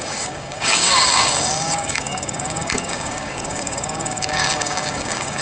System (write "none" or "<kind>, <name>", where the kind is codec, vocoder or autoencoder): codec, DAC